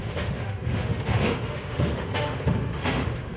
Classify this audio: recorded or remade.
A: remade